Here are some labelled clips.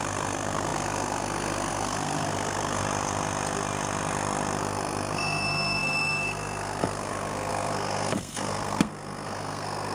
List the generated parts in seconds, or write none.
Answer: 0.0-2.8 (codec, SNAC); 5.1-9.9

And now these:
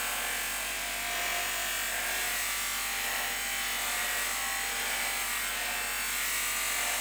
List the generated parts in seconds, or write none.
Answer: none

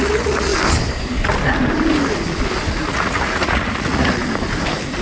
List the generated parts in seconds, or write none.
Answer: 0.0-0.5 (vocoder, Vocos); 2.7-4.2

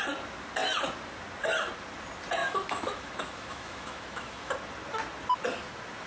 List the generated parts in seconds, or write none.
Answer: 2.4-4.5 (autoencoder, DAC-VAE)